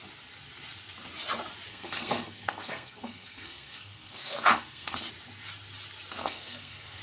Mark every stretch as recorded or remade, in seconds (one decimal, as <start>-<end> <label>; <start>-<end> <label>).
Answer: 0.0-1.7 recorded; 1.7-5.1 remade; 5.1-6.2 recorded; 6.2-7.0 remade